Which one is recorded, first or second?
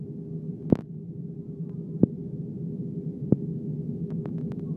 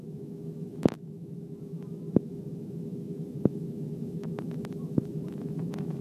first